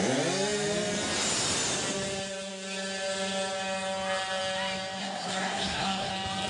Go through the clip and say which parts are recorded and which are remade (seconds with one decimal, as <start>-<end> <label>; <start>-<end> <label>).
0.0-5.0 recorded; 5.0-6.1 remade; 6.1-6.5 recorded